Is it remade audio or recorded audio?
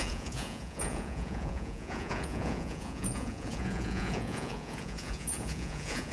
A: remade